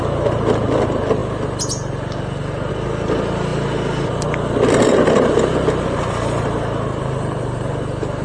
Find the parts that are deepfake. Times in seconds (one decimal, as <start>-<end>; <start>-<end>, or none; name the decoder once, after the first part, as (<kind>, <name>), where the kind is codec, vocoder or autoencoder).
none